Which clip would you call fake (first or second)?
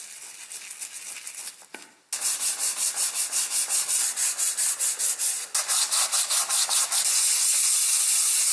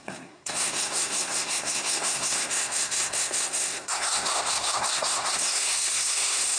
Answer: second